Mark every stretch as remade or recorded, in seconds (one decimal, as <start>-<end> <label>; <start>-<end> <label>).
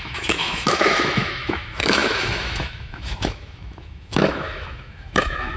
0.0-5.6 remade